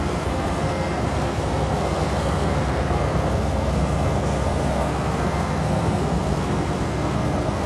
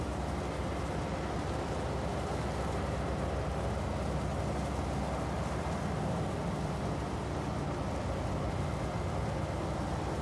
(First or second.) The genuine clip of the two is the second